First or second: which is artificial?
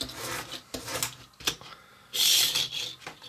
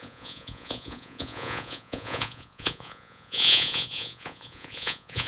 second